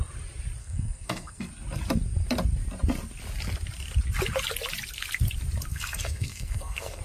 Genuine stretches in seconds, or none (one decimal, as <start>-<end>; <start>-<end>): 0.0-0.6; 1.5-5.7